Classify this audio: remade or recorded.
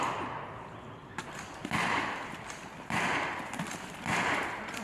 recorded